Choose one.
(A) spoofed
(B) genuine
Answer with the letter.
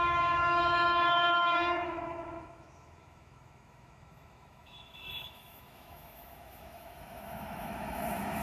A